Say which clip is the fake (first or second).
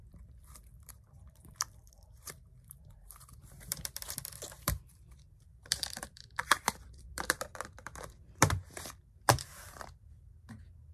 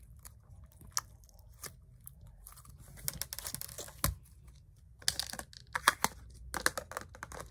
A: first